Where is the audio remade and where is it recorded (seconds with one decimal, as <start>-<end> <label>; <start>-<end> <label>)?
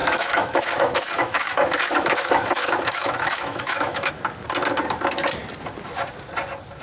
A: 0.0-4.1 remade; 4.1-6.8 recorded